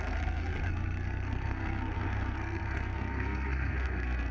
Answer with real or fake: fake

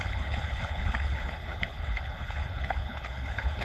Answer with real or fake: fake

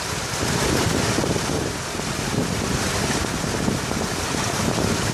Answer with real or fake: real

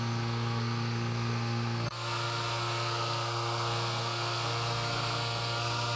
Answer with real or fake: fake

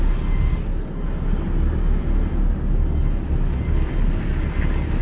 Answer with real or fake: real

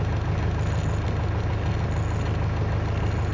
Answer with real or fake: real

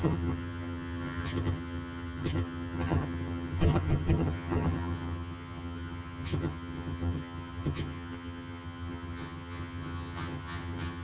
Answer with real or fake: fake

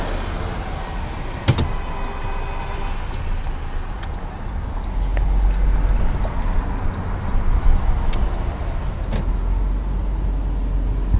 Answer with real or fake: real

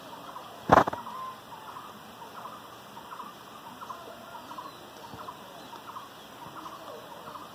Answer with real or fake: real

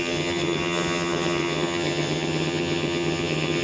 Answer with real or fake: fake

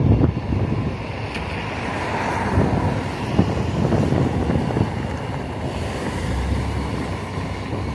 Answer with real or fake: real